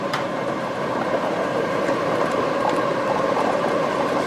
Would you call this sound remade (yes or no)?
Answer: yes